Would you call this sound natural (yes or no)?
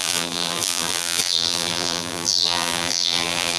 no